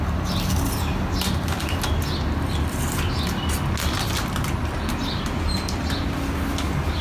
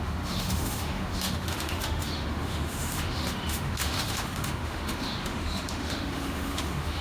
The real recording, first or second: first